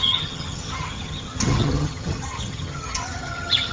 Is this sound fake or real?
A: fake